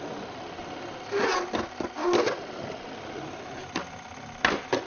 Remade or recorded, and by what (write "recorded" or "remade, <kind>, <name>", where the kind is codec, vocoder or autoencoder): recorded